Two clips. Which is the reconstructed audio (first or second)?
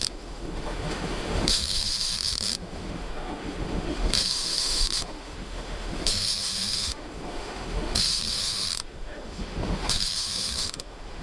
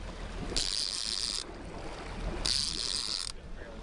first